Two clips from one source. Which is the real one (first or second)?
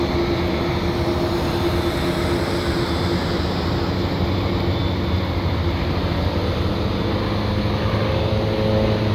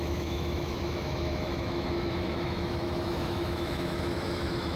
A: first